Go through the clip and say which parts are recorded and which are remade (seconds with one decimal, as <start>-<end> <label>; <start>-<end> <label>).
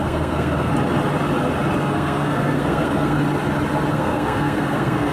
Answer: 0.0-0.7 remade; 0.7-1.8 recorded; 1.8-3.2 remade; 3.2-3.9 recorded; 3.9-5.1 remade